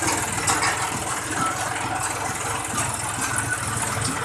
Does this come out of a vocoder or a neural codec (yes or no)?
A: no